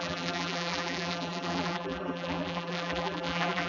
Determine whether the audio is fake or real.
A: fake